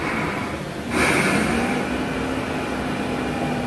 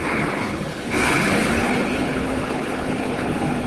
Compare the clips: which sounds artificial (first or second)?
second